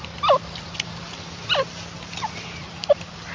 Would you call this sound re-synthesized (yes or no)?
no